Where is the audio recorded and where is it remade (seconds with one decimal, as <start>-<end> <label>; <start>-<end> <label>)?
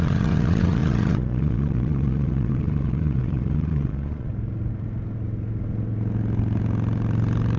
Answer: 0.0-4.3 remade; 4.3-7.6 recorded